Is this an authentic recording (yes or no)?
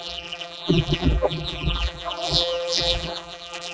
no